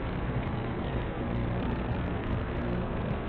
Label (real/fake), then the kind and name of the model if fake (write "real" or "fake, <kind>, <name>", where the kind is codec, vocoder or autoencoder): fake, codec, SNAC